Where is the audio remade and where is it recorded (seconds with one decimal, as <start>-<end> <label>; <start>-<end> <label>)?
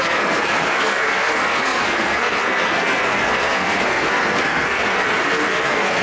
0.0-6.0 remade